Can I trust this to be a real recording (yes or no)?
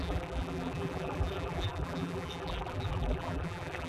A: no